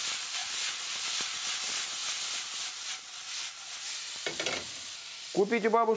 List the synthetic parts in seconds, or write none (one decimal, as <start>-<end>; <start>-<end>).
0.4-1.0